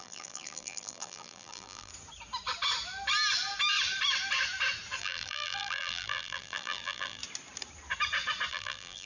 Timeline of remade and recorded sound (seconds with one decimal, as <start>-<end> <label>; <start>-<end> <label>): 0.0-1.9 remade; 1.9-5.0 recorded; 5.0-7.2 remade; 7.2-8.5 recorded; 8.5-9.1 remade